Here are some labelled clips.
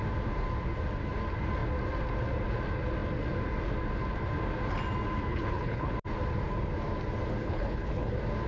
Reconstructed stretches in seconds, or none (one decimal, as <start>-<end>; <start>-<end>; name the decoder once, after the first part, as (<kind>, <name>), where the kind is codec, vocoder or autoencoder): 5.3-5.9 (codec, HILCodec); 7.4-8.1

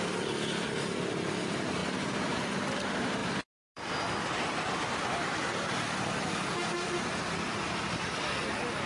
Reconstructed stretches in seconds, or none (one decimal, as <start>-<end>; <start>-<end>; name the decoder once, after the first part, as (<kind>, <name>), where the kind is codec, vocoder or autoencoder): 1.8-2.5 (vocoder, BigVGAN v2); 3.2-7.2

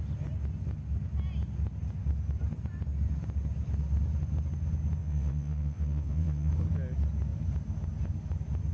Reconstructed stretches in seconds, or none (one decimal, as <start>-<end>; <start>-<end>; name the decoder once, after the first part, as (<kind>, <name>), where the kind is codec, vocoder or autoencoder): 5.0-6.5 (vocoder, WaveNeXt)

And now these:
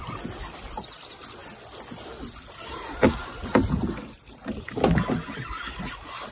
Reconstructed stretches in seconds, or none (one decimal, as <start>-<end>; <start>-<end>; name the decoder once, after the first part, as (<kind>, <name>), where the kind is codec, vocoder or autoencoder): none